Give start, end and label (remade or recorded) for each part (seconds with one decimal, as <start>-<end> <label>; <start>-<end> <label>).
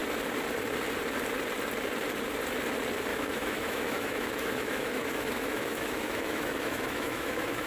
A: 0.0-3.1 recorded; 3.1-7.7 remade